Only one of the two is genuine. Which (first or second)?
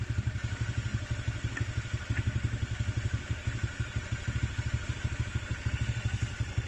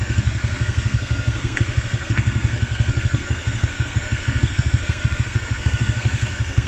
first